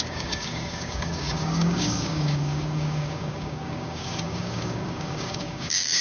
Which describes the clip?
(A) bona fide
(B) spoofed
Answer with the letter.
B